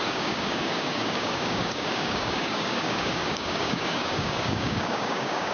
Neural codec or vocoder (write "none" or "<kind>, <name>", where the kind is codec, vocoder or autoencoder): codec, DAC